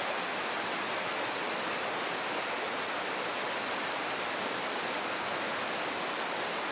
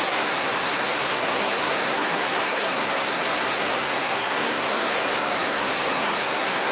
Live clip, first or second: first